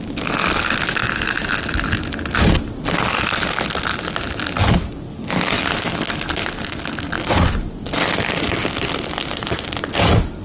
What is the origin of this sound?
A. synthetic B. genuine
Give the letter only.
B